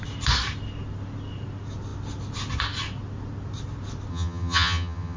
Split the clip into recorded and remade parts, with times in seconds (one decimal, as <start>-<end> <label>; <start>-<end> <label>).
0.0-4.1 recorded; 4.1-5.2 remade